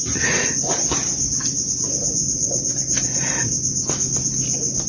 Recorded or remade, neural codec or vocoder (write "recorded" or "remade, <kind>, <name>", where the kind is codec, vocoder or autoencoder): recorded